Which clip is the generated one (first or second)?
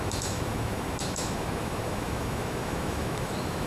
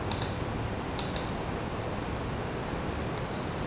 first